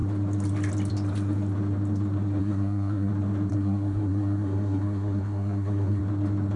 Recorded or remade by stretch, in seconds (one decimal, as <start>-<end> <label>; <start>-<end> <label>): 0.0-2.4 recorded; 2.4-3.1 remade; 3.1-3.5 recorded; 3.5-6.0 remade; 6.0-6.6 recorded